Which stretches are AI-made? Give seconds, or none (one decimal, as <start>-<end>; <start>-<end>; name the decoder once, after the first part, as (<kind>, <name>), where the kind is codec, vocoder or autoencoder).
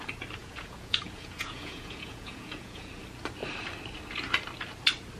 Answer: 0.4-2.9 (vocoder, Vocos)